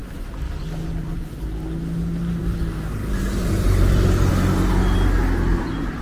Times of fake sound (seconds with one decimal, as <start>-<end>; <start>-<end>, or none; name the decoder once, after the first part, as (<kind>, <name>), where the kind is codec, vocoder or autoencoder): 3.0-4.3 (vocoder, BigVGAN v2)